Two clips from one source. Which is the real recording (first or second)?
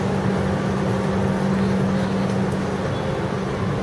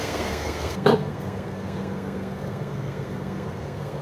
first